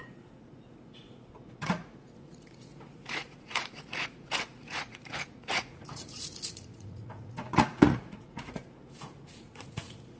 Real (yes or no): no